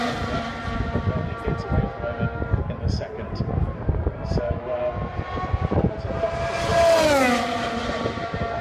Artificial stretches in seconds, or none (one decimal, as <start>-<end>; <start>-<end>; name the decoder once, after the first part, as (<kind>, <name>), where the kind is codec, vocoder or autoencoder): none